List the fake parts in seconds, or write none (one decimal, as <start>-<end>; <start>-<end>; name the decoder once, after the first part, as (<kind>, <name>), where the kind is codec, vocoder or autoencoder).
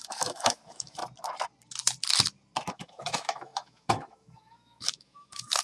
0.0-1.0 (autoencoder, DAC-VAE); 2.7-5.6